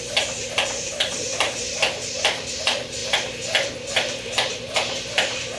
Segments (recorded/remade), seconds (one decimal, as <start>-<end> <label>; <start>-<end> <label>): 0.0-3.0 remade; 3.0-4.5 recorded; 4.5-5.6 remade